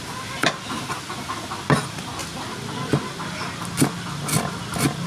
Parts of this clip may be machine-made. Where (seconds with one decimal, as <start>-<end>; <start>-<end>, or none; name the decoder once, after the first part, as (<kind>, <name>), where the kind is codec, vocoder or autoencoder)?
none